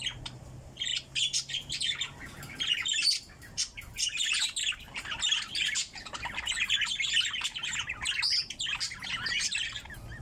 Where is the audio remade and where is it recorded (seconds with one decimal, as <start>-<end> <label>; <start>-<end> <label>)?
0.0-10.2 recorded